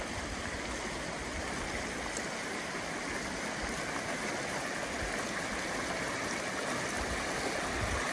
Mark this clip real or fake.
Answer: real